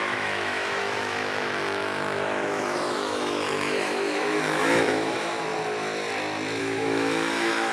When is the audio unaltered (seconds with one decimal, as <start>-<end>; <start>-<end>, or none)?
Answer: 5.5-6.6